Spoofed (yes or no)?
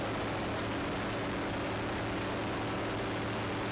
no